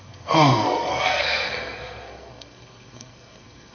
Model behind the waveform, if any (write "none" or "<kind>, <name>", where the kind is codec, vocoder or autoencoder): codec, SNAC